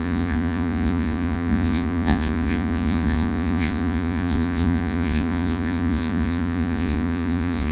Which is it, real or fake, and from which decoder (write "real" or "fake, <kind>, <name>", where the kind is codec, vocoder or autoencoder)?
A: fake, vocoder, Vocos